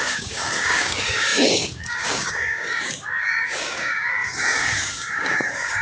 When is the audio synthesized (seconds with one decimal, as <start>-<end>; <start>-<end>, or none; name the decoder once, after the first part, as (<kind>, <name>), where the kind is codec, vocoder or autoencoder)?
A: 0.0-5.8 (codec, DAC)